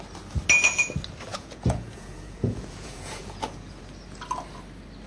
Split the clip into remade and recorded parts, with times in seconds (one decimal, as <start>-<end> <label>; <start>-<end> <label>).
0.0-1.3 recorded; 1.3-3.8 remade; 3.8-5.1 recorded